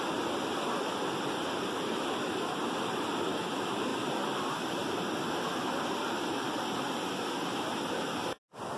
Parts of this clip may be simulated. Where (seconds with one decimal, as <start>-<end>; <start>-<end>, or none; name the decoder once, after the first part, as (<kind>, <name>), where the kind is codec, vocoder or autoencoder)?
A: none

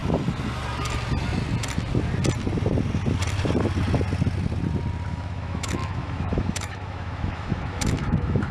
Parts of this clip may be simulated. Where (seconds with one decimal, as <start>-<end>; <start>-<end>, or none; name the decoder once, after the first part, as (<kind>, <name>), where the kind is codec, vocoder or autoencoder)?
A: 5.1-8.5 (autoencoder, DAC-VAE)

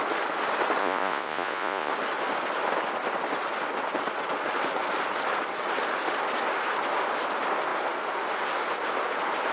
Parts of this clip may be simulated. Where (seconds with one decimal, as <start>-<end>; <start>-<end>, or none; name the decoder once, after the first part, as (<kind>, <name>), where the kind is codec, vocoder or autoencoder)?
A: 0.8-1.9 (vocoder, Vocos)

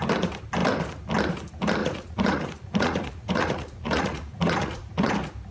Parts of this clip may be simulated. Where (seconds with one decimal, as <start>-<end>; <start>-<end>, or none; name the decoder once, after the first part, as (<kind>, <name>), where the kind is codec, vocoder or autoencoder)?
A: 1.8-5.1 (vocoder, Vocos)

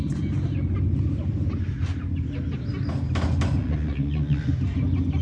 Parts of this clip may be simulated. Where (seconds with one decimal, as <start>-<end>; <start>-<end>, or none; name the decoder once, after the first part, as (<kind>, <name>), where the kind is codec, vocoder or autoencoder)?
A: 3.6-4.5 (vocoder, Vocos)

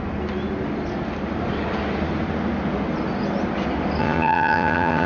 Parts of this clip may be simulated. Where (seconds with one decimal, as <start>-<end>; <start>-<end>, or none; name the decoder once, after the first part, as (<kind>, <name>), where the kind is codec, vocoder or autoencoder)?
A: 4.0-5.1 (vocoder, HiFi-GAN)

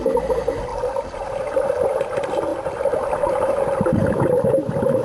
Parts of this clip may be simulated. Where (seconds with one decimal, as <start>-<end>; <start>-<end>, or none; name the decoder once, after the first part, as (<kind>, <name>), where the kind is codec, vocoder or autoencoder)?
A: 0.7-2.0 (vocoder, BigVGAN v2); 2.5-4.1

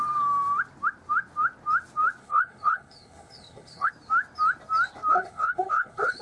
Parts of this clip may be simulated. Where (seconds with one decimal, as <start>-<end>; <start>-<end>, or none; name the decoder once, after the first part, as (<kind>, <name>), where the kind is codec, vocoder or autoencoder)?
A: 2.2-3.9 (codec, HILCodec); 5.1-6.2